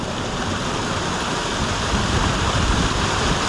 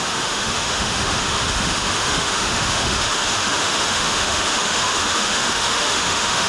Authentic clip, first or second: first